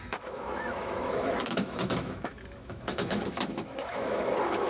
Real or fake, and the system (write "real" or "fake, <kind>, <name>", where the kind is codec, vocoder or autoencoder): fake, autoencoder, DAC-VAE